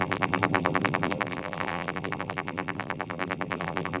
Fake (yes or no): yes